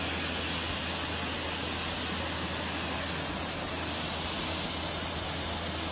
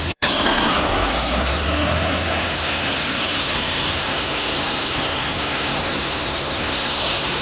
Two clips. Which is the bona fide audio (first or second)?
first